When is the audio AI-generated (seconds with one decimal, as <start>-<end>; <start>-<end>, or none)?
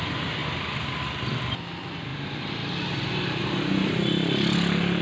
none